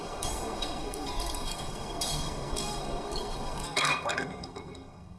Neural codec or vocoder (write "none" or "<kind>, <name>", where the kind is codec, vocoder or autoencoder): codec, SNAC